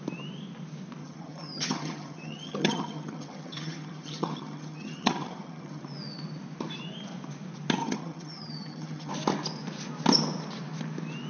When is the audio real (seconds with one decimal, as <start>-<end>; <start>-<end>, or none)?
0.0-1.0; 5.8-7.8; 9.1-11.3